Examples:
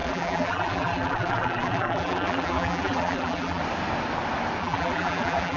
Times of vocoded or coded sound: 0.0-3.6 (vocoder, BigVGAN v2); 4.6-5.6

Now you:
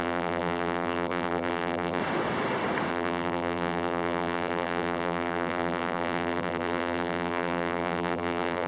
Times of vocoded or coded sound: 0.0-2.0 (vocoder, BigVGAN v2); 2.9-8.7